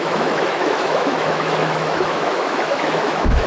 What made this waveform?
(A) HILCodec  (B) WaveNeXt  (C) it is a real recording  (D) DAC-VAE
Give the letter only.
D